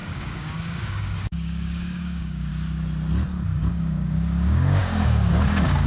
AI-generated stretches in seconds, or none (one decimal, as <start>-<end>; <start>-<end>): 0.0-2.5; 3.7-5.9